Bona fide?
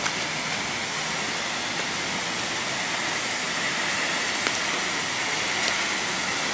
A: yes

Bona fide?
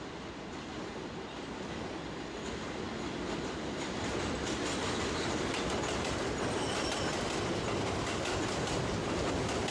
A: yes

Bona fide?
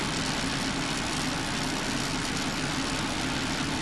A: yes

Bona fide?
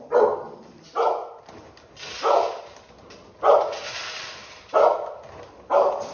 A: yes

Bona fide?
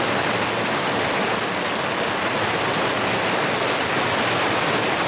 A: yes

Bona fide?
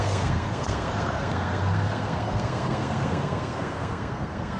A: no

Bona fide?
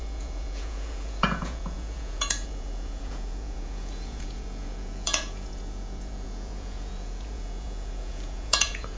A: no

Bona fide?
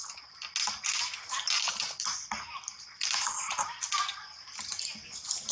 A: yes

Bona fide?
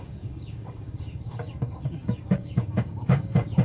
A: no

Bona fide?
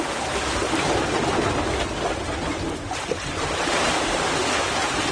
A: yes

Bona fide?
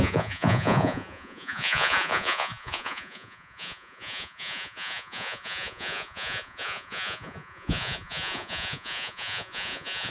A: no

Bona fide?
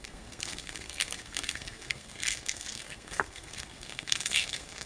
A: no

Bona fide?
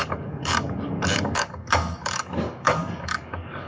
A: no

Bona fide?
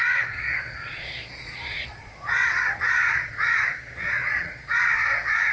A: no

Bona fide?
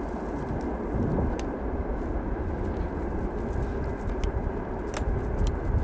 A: yes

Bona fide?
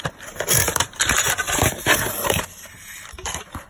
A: no